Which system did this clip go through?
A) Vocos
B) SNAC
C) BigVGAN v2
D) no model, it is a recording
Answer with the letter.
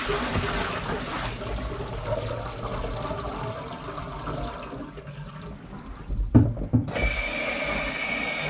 D